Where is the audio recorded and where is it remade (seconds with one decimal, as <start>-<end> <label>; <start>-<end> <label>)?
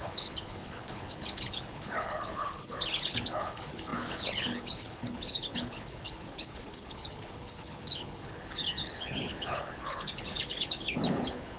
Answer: 0.0-11.6 remade